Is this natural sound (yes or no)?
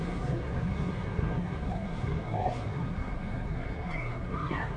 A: no